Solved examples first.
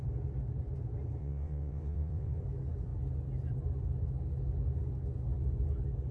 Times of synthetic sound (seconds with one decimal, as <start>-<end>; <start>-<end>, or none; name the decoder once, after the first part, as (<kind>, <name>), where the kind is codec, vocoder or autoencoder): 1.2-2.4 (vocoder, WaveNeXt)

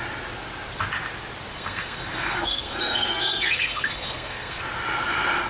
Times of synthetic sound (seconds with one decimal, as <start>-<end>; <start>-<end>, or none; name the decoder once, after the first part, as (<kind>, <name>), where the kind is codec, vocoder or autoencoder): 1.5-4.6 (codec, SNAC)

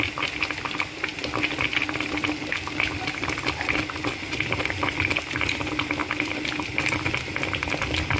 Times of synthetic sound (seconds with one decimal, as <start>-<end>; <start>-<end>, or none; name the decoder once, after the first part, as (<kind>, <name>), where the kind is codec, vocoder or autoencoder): none